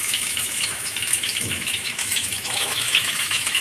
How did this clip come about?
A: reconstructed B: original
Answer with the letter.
A